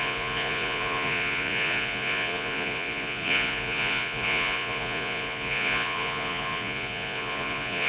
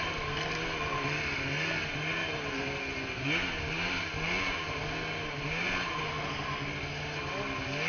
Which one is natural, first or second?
second